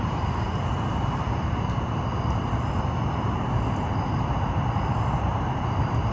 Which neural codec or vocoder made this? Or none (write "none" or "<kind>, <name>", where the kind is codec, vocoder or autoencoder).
none